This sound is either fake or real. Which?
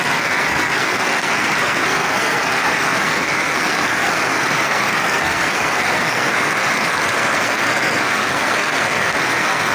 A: fake